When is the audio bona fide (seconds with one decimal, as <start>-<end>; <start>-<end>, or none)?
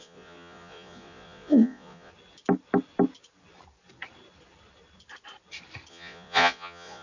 2.1-5.9